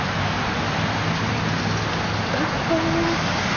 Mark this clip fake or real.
real